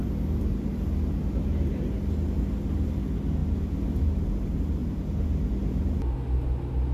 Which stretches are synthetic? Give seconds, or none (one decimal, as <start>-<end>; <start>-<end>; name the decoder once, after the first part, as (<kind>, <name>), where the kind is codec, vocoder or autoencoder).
none